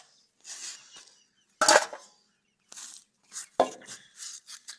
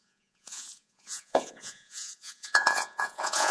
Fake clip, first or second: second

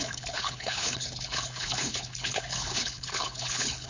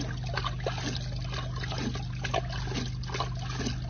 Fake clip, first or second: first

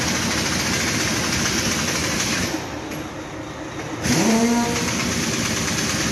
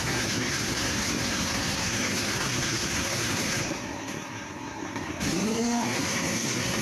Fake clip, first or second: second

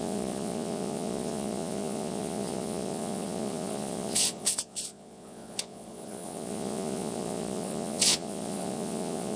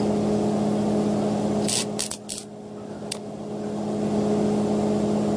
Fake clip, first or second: first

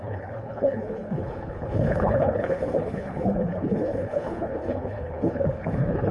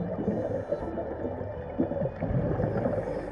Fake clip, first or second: first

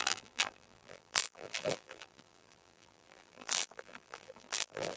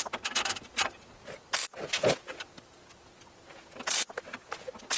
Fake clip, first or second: first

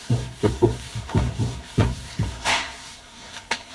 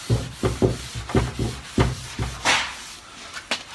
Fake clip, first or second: first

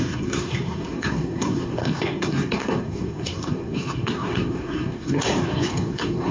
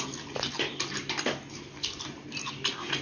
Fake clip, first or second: first